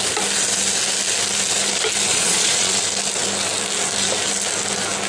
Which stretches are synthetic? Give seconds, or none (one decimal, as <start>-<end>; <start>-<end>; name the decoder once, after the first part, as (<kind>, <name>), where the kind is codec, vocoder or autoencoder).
2.1-2.8 (vocoder, Vocos)